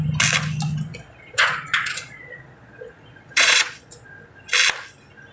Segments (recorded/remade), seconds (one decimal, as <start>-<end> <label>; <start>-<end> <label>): 0.0-0.9 recorded; 0.9-4.1 remade; 4.1-5.3 recorded